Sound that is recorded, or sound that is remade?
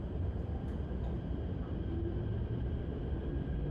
remade